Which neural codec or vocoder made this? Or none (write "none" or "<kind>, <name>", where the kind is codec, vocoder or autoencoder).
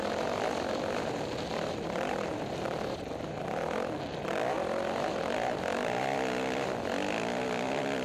none